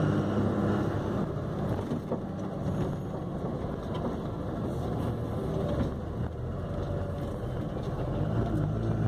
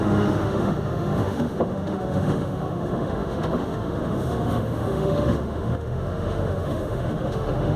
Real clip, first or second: first